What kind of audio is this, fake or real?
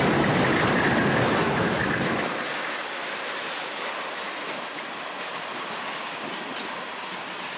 real